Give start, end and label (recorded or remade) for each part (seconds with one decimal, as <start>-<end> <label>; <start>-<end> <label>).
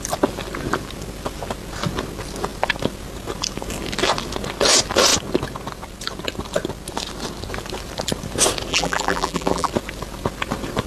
0.0-8.7 recorded; 8.7-9.7 remade; 9.7-10.9 recorded